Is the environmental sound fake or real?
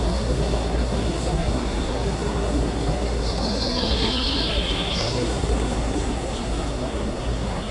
fake